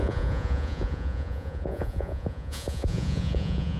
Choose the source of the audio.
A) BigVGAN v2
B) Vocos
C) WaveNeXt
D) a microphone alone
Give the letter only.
B